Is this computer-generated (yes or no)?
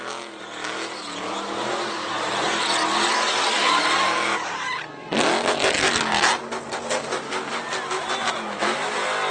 no